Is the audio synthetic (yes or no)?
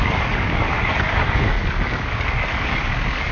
yes